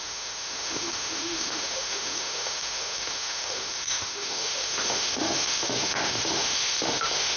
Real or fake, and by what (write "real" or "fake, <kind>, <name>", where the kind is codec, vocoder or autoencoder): fake, autoencoder, DAC-VAE